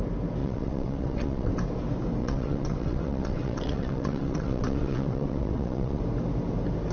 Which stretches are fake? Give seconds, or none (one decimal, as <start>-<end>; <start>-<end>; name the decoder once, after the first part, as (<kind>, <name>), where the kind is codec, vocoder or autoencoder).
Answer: 0.4-1.5 (vocoder, WaveNeXt); 2.2-6.0